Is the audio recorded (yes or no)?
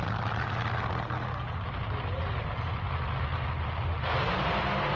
yes